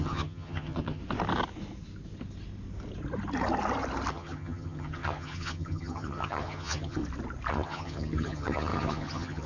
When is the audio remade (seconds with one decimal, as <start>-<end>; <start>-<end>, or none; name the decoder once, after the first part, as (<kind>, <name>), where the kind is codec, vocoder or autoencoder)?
0.0-1.0 (vocoder, HiFi-GAN); 4.1-7.0; 7.5-9.5